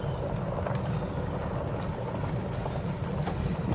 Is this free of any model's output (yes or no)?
yes